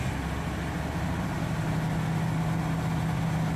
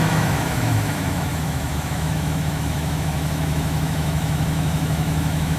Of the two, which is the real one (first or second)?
first